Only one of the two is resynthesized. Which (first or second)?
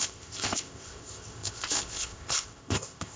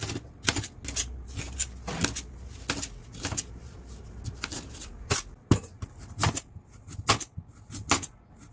first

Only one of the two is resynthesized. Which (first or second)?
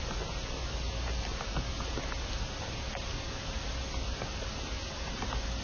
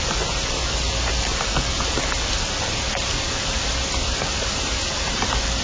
second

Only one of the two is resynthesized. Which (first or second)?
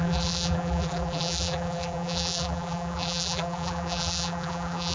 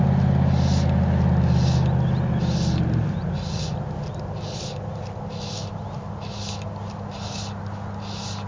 first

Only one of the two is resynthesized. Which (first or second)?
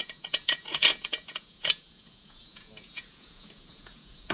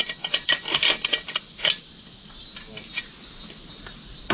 first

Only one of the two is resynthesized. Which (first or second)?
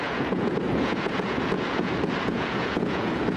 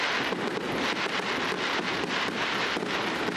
first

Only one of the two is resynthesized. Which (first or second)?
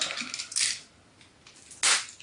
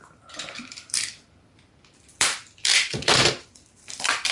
second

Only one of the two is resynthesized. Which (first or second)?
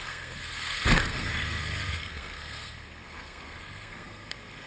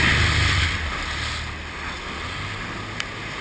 first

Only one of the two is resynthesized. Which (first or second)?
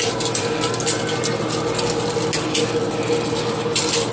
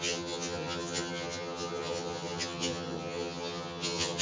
second